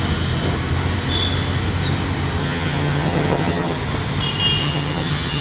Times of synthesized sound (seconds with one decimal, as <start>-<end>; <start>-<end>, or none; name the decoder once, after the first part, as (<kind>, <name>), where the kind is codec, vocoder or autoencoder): 2.4-3.8 (vocoder, HiFi-GAN); 4.6-5.4

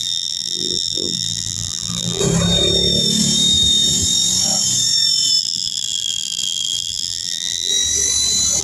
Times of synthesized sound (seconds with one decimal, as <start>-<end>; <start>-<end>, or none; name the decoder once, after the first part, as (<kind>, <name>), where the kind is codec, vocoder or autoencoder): 0.0-2.2 (vocoder, BigVGAN v2); 5.4-7.7

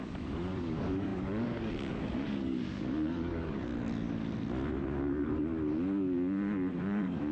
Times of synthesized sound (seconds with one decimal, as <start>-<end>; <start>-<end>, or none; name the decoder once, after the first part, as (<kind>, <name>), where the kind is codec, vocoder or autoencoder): 0.0-3.7 (codec, DAC); 4.8-5.5; 6.8-7.3

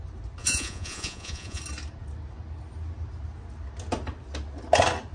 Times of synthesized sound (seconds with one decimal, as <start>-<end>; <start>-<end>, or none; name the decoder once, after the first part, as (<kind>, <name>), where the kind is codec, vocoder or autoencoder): 0.4-1.6 (vocoder, Vocos)

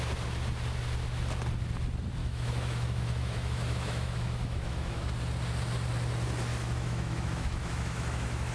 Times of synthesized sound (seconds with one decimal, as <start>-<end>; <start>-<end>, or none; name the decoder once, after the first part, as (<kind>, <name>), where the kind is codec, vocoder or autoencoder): 2.2-5.1 (autoencoder, DAC-VAE); 6.5-8.5

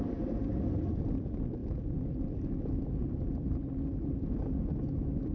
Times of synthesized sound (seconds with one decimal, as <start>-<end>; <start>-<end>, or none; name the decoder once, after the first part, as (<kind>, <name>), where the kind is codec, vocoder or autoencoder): none

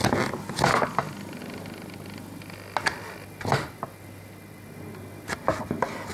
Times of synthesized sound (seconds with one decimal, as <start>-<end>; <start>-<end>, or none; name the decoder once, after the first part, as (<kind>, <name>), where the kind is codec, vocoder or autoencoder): none